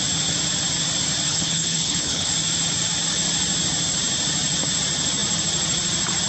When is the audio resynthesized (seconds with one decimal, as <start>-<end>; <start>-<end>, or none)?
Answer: 1.3-2.3